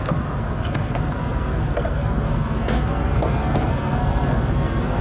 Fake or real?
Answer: fake